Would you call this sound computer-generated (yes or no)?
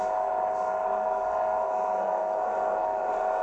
yes